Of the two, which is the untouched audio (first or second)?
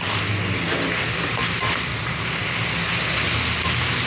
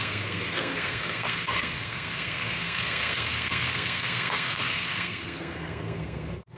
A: first